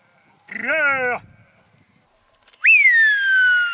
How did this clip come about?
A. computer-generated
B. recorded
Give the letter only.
B